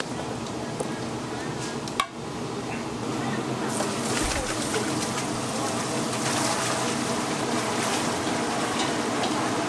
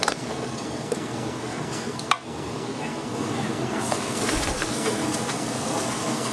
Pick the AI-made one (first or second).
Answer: second